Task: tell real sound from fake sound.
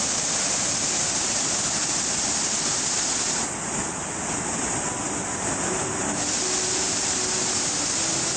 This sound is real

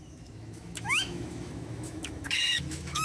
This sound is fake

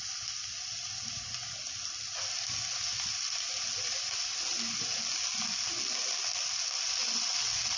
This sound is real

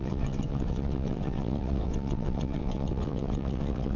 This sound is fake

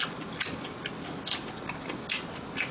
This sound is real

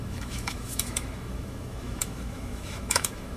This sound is fake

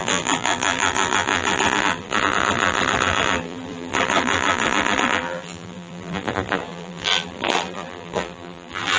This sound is fake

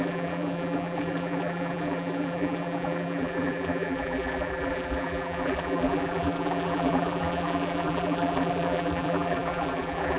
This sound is fake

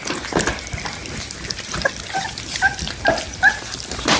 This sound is real